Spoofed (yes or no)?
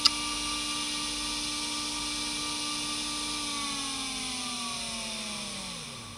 no